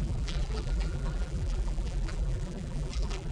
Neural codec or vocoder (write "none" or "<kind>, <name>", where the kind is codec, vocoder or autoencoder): vocoder, BigVGAN v2